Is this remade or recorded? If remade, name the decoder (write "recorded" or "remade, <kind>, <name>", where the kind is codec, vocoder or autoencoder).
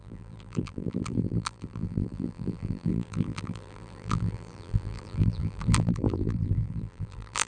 remade, vocoder, BigVGAN v2